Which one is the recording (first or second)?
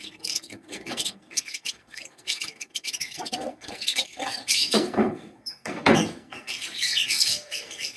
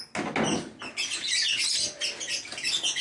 second